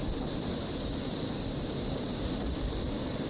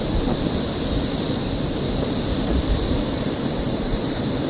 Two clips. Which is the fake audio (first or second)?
second